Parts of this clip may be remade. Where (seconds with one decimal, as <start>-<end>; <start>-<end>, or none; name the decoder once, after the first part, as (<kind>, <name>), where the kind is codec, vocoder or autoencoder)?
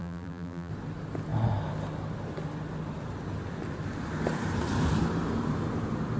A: 0.0-0.7 (vocoder, BigVGAN v2)